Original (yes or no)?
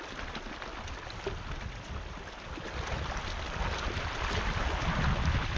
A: yes